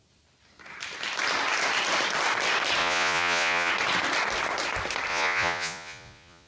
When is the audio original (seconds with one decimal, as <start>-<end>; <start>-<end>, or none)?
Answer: 0.0-2.8; 3.7-5.1